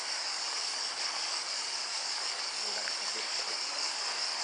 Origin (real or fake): fake